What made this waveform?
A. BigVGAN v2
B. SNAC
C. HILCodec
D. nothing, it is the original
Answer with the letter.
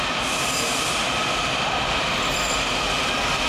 D